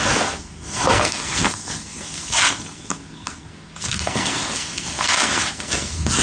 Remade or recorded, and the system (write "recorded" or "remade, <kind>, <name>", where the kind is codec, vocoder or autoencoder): remade, codec, SNAC